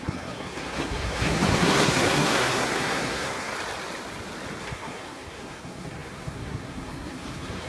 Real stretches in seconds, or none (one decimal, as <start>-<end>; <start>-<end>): 3.5-4.6